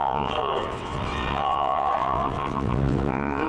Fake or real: fake